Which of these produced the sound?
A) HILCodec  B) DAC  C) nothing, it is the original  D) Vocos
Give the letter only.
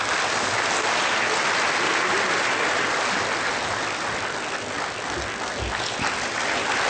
C